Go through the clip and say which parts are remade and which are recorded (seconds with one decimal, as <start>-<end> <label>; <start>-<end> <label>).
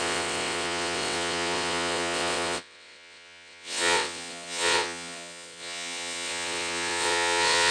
0.0-7.7 remade